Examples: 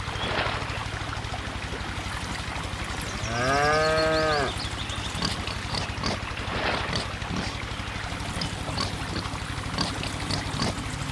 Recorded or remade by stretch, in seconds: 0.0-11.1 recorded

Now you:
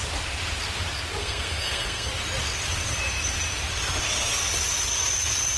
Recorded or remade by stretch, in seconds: 0.0-1.2 recorded; 1.2-2.1 remade; 2.1-5.6 recorded